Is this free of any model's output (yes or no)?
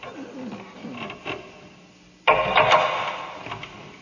yes